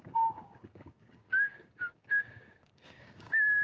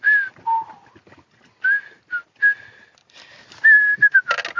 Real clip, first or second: second